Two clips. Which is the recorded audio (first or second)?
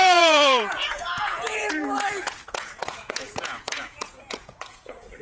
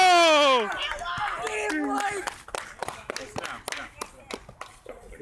second